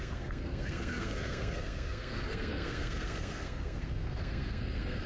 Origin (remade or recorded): remade